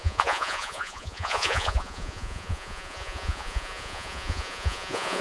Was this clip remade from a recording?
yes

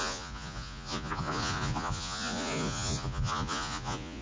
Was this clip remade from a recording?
yes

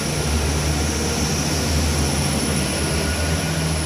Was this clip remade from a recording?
no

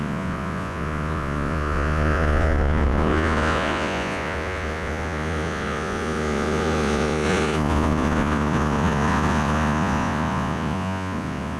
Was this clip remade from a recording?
yes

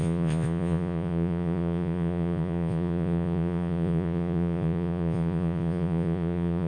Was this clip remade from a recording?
yes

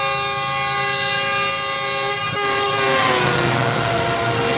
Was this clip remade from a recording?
no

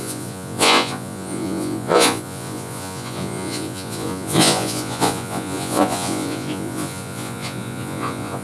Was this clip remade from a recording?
yes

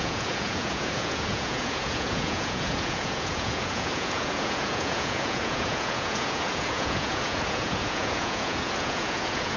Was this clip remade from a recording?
yes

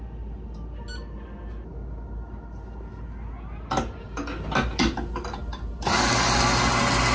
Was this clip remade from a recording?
no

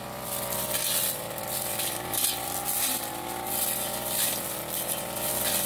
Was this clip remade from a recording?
no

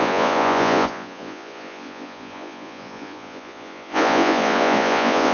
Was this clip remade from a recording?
yes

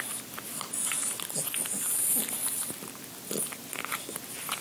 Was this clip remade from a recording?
no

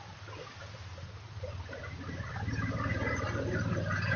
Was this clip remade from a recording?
no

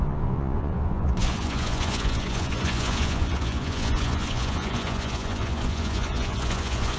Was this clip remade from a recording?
yes